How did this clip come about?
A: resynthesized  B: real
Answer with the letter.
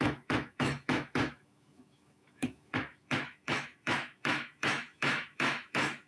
A